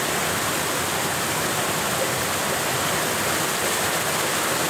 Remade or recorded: recorded